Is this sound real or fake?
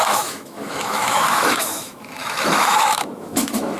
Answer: fake